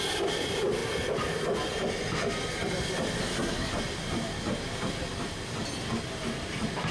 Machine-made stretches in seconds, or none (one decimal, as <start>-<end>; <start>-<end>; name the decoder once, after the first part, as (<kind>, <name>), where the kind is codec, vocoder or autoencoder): 3.2-3.7 (codec, SNAC)